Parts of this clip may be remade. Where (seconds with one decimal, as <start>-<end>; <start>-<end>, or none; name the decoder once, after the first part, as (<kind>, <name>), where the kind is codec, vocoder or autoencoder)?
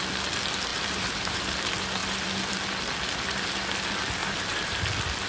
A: 0.7-1.4 (vocoder, BigVGAN v2); 4.2-4.8